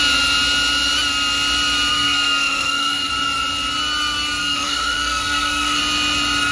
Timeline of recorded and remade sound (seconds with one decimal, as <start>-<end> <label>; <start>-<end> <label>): 0.0-1.9 recorded; 1.9-3.1 remade; 3.1-4.4 recorded; 4.4-5.8 remade; 5.8-6.5 recorded

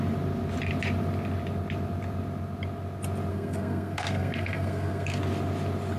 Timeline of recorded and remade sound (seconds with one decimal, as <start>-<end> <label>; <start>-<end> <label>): 0.0-3.3 recorded; 3.3-5.2 remade; 5.2-6.0 recorded